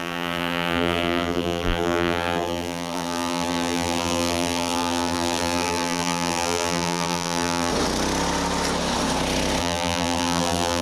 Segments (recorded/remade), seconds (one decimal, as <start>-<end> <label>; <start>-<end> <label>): 0.0-7.7 remade; 7.7-9.6 recorded; 9.6-10.8 remade